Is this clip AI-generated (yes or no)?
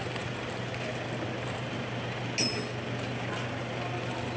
no